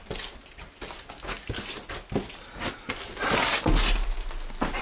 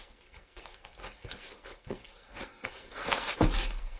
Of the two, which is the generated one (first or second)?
second